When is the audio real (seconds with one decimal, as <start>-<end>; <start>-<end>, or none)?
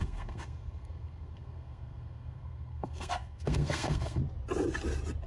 4.2-5.3